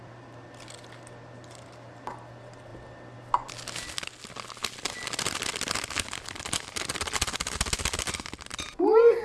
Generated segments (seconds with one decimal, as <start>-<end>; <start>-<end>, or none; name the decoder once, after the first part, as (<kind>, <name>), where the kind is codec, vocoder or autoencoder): none